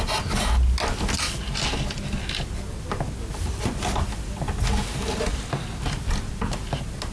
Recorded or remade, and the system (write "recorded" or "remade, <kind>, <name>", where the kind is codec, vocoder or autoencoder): recorded